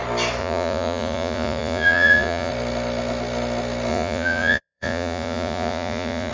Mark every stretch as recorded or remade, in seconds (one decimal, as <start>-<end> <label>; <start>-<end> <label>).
0.0-0.4 recorded; 0.4-2.5 remade; 2.5-3.9 recorded; 3.9-6.3 remade